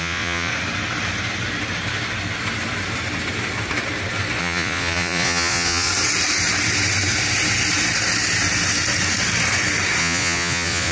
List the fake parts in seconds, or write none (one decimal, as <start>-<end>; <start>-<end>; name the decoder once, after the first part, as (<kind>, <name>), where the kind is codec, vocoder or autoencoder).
0.0-0.5 (vocoder, Vocos); 4.4-5.9; 10.0-10.9

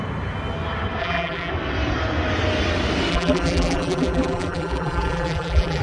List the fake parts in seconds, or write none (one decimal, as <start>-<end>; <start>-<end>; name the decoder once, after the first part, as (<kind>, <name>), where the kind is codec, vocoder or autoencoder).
1.0-1.5 (vocoder, BigVGAN v2); 3.1-5.8

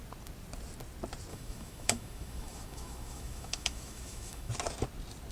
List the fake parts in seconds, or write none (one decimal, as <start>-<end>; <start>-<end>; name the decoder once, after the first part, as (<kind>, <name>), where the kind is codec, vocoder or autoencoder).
1.3-4.5 (autoencoder, DAC-VAE)

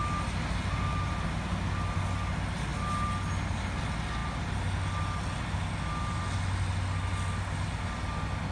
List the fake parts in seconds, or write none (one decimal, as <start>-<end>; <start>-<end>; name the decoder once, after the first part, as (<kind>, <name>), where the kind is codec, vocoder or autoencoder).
none